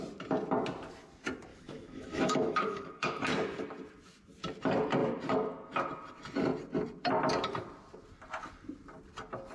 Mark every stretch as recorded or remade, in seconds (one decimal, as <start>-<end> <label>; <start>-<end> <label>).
0.0-1.5 recorded; 1.5-3.1 remade; 3.1-9.5 recorded